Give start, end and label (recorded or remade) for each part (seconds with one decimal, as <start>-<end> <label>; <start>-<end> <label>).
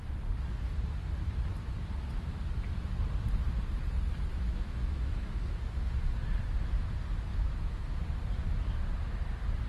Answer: 0.0-4.3 recorded; 4.3-5.6 remade; 5.6-7.3 recorded; 7.3-8.0 remade; 8.0-9.7 recorded